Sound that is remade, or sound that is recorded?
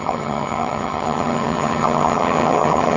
remade